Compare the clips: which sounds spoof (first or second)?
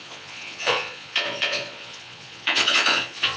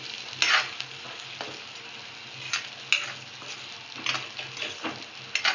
first